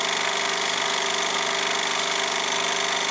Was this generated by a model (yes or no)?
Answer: no